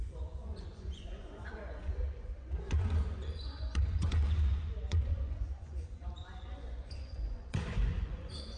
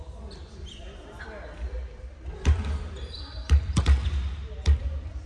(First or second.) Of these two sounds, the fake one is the first